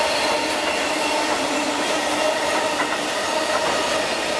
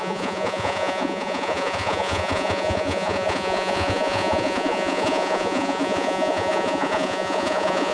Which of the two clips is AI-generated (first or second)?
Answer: second